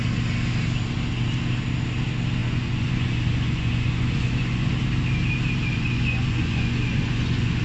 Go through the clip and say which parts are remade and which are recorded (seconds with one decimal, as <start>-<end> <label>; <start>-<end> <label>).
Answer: 0.0-2.4 recorded; 2.4-4.7 remade; 4.7-5.7 recorded; 5.7-7.6 remade